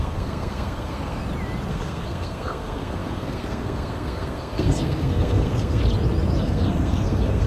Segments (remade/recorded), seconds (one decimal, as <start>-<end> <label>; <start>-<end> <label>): 0.0-1.2 remade; 1.2-1.7 recorded; 1.7-5.8 remade; 5.8-6.4 recorded; 6.4-7.5 remade